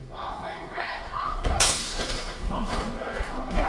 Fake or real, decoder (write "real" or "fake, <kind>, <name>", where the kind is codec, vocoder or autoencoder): fake, codec, SNAC